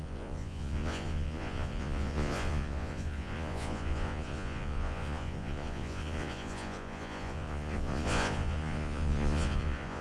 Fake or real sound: fake